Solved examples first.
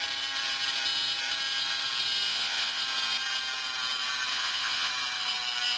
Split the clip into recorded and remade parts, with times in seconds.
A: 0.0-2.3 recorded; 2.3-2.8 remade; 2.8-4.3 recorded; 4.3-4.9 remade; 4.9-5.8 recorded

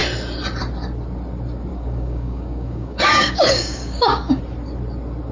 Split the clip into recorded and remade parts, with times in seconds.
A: 0.0-1.7 recorded; 1.7-4.4 remade; 4.4-5.3 recorded

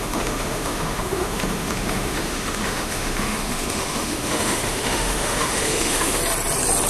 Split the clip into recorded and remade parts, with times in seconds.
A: 0.0-6.2 remade; 6.2-6.9 recorded

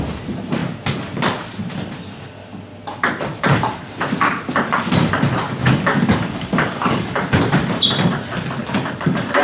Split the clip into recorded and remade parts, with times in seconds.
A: 0.0-5.6 recorded; 5.6-7.2 remade; 7.2-8.6 recorded; 8.6-9.4 remade

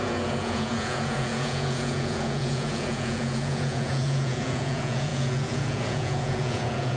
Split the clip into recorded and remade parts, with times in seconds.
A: 0.0-7.0 remade

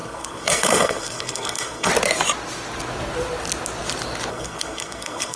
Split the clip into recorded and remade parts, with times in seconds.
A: 0.0-1.9 remade; 1.9-4.3 recorded; 4.3-5.4 remade

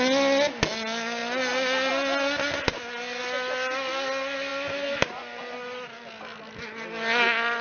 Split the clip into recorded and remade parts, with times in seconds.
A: 0.0-7.6 recorded